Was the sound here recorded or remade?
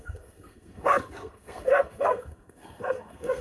remade